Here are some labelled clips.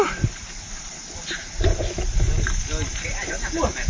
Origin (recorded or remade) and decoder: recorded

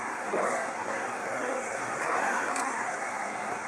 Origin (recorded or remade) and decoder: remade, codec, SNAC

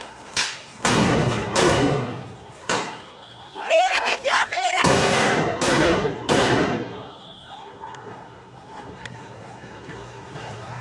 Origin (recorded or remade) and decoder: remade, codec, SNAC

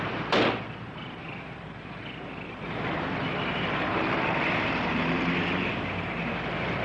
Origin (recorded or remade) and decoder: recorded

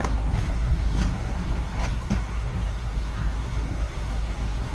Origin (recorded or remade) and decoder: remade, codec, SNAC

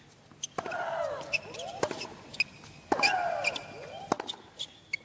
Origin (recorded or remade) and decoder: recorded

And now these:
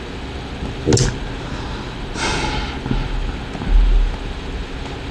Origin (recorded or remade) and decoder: recorded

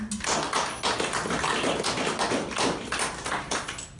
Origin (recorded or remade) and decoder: recorded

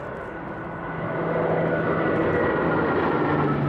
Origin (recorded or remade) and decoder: recorded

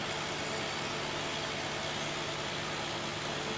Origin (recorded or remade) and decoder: recorded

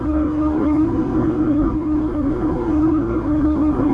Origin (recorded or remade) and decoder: remade, codec, SNAC